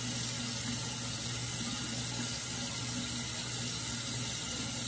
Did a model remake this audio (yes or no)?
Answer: no